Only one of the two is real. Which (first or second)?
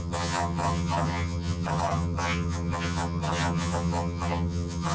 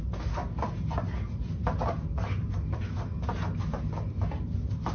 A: second